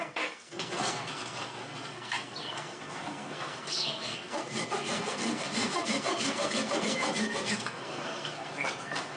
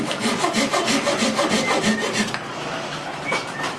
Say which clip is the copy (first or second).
first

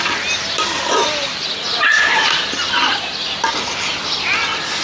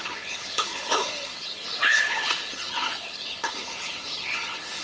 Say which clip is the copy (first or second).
second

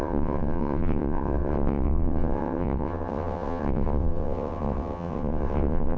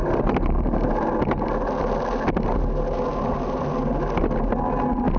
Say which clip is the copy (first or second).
first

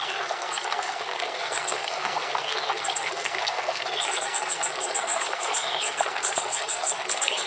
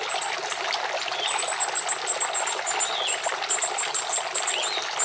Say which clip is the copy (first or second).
first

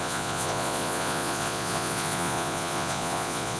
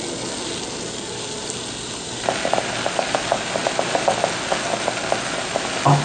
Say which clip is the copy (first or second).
first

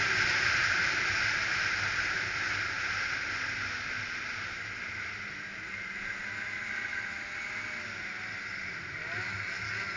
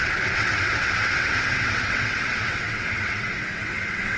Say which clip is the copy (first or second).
second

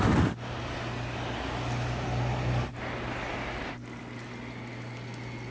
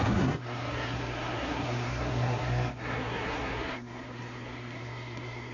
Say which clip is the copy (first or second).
second